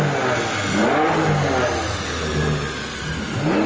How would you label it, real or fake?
real